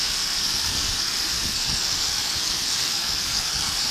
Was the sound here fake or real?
fake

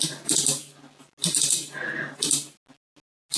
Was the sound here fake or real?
real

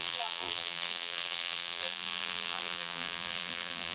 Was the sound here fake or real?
fake